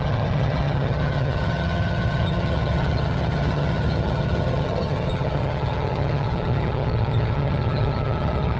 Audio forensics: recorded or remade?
remade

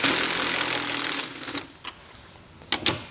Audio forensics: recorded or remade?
recorded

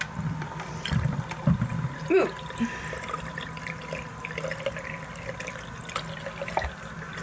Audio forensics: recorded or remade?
recorded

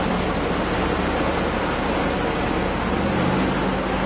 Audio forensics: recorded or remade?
recorded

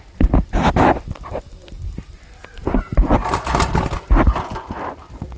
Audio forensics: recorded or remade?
recorded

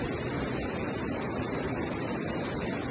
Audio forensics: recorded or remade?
recorded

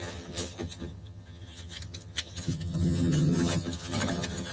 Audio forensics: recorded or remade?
remade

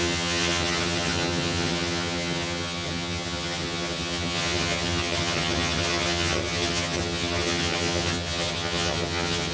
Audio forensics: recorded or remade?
remade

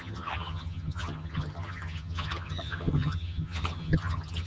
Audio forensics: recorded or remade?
remade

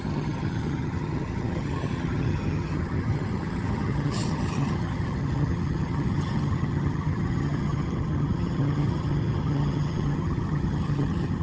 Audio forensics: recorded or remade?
remade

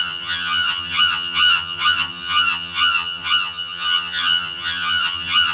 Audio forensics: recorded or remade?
remade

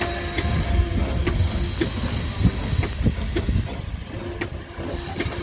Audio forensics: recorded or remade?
recorded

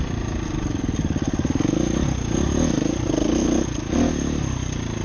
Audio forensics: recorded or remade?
recorded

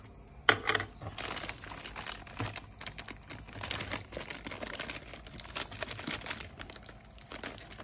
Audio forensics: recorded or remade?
recorded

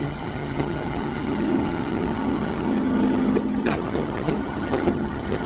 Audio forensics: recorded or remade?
remade